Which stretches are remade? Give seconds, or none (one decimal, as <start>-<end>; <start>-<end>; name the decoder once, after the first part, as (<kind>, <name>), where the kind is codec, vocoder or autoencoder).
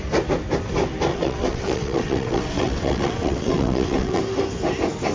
1.1-4.2 (vocoder, WaveNeXt)